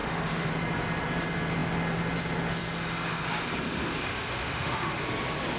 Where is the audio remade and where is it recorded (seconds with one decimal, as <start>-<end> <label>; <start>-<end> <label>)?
0.0-0.5 remade; 0.5-4.1 recorded; 4.1-5.0 remade; 5.0-5.6 recorded